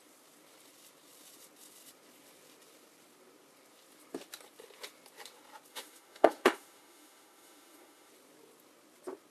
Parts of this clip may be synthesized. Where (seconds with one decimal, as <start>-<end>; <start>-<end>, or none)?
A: 5.7-8.1